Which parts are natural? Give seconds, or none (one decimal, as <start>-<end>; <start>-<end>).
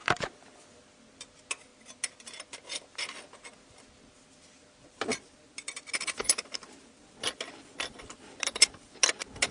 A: 0.0-9.5